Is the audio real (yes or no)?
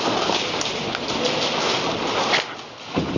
yes